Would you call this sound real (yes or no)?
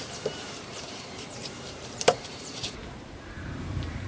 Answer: no